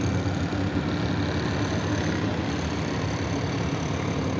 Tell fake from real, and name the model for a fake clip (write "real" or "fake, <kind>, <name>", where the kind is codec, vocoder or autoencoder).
real